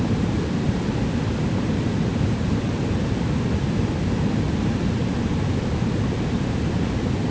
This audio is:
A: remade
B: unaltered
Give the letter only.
B